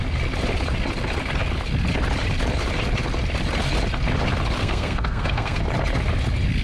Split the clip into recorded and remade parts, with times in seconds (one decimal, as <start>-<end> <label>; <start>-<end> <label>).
0.0-4.6 recorded; 4.6-5.6 remade; 5.6-6.6 recorded